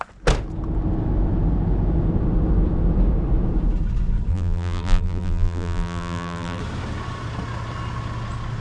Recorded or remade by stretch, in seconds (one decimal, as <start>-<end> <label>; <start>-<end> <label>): 0.0-4.3 recorded; 4.3-6.6 remade; 6.6-8.6 recorded